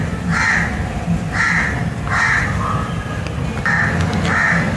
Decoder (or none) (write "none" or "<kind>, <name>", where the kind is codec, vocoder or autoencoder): none